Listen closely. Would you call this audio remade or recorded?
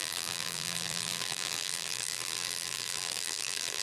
remade